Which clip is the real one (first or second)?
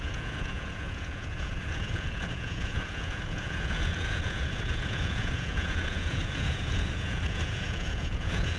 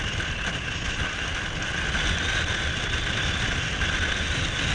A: second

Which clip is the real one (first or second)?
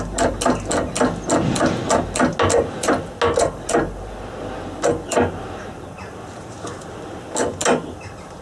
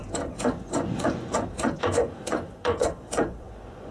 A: first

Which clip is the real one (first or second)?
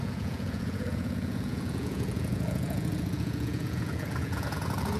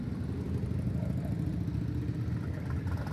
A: second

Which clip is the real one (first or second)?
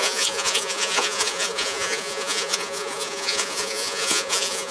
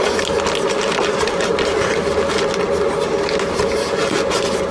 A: second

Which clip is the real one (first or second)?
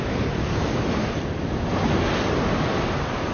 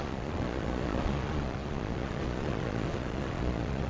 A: first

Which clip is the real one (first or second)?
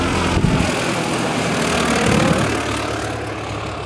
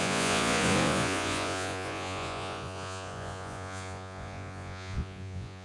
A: first